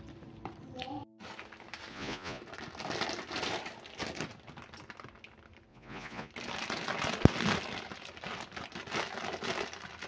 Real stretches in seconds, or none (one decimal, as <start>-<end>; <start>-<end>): 0.0-1.9; 2.4-5.7; 6.3-10.1